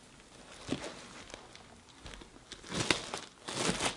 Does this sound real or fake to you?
real